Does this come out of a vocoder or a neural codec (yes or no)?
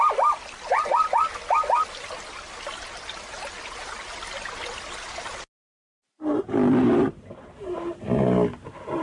no